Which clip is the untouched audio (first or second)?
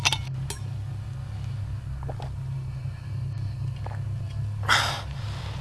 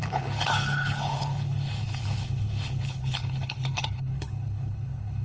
first